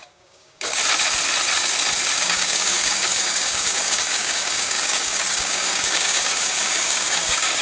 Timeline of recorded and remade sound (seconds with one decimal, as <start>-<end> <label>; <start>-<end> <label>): 0.0-0.8 remade; 0.8-2.1 recorded; 2.1-7.6 remade